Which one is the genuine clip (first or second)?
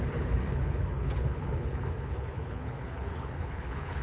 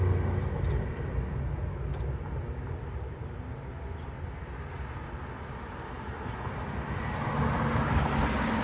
second